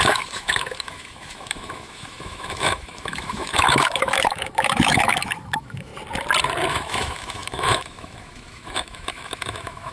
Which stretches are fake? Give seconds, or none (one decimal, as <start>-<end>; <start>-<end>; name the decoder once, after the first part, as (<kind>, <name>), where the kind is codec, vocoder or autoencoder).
0.0-5.9 (autoencoder, DAC-VAE); 6.7-9.9